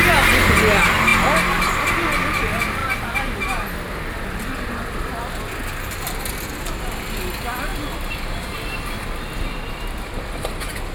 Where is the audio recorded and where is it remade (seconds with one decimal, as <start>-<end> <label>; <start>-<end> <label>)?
0.0-10.9 recorded